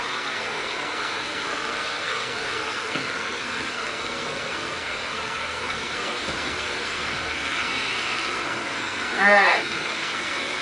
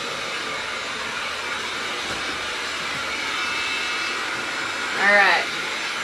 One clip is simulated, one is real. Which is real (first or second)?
second